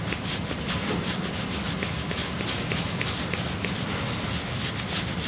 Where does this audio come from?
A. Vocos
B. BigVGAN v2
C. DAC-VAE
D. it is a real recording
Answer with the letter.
D